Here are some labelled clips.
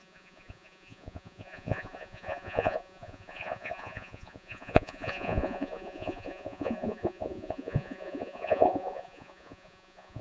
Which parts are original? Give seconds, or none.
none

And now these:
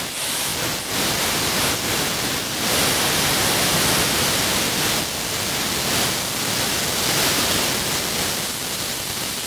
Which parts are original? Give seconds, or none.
0.0-9.5

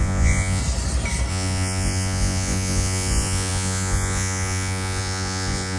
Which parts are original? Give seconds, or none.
0.6-1.3